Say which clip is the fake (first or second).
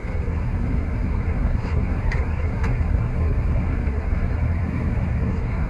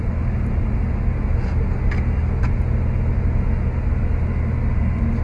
first